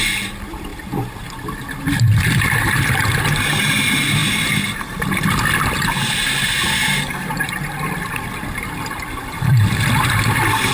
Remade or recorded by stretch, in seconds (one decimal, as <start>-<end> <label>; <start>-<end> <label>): 0.0-0.7 recorded; 0.7-3.2 remade; 3.2-10.7 recorded